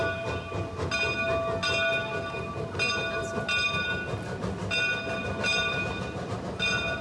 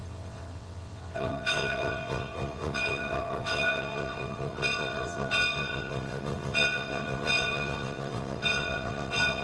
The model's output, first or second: second